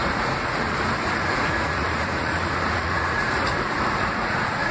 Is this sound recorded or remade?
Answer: remade